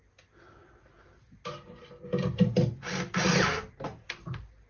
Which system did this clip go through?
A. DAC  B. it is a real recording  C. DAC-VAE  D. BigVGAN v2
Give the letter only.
B